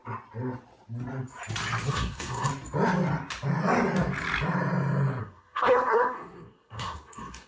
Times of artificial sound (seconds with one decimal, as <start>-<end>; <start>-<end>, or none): 1.9-2.5; 5.2-7.5